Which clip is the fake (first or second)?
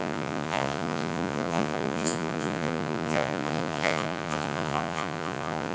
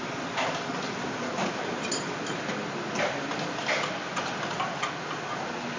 first